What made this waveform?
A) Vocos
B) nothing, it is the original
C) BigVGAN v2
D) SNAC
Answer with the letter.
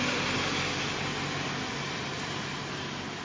B